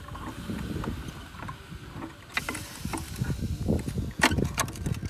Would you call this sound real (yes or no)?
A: yes